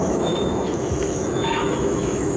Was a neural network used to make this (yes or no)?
yes